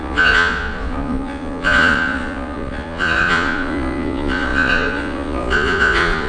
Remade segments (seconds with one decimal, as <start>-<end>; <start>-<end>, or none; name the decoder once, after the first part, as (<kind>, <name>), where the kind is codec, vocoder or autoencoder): 0.0-6.3 (vocoder, Vocos)